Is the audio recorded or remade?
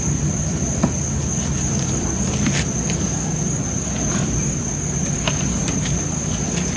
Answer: recorded